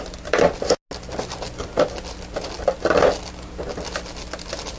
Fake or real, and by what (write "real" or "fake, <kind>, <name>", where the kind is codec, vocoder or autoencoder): real